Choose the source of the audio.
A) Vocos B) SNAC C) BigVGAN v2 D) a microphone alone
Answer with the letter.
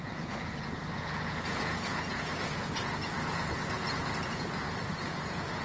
A